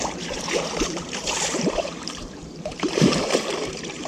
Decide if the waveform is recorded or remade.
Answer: remade